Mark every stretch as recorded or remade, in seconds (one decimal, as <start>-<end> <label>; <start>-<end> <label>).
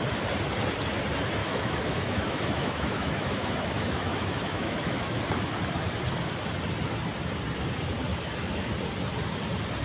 0.0-1.4 recorded; 1.4-5.2 remade; 5.2-8.1 recorded; 8.1-8.7 remade; 8.7-9.8 recorded